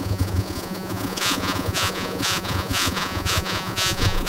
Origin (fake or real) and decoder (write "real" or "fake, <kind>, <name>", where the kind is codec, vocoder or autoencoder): fake, vocoder, Vocos